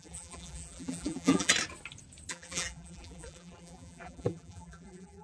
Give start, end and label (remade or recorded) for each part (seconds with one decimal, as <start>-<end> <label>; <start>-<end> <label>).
0.0-1.5 remade; 1.5-2.3 recorded; 2.3-5.2 remade